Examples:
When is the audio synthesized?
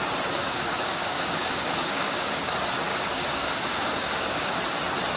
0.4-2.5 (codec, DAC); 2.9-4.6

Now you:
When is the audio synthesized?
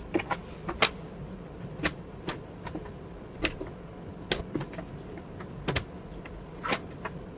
none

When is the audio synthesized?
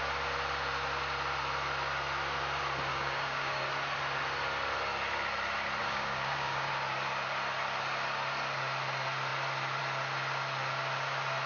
2.9-3.6 (codec, DAC); 5.8-6.7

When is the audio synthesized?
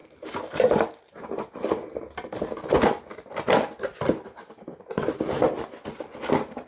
none